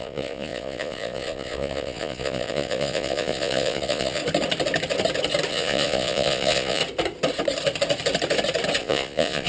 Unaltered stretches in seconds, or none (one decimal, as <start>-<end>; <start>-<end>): 4.2-5.5; 6.8-8.8